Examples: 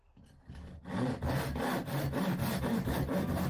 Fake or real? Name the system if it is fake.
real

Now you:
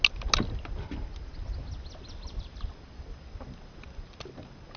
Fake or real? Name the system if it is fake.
real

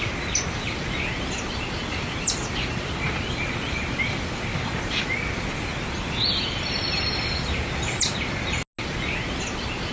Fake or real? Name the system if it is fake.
real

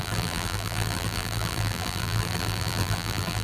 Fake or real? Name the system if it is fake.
fake, vocoder, BigVGAN v2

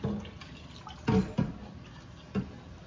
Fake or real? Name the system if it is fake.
real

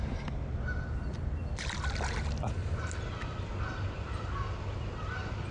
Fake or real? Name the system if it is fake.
real